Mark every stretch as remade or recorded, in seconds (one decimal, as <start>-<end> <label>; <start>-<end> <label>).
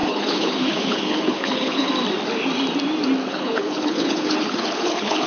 0.0-1.9 remade; 1.9-3.2 recorded; 3.2-5.3 remade